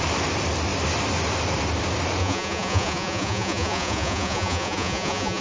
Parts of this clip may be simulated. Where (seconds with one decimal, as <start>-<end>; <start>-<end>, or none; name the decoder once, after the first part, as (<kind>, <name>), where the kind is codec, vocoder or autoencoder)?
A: 2.2-5.4 (vocoder, Vocos)